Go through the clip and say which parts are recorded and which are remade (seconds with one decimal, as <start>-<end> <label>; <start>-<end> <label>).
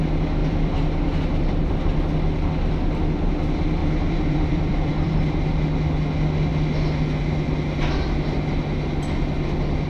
0.0-0.4 recorded; 0.4-1.8 remade; 1.8-3.8 recorded; 3.8-5.6 remade; 5.6-9.9 recorded